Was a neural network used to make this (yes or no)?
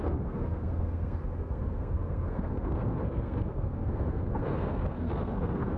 yes